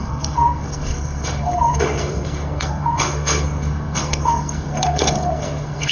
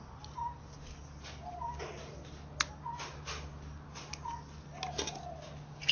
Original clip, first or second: second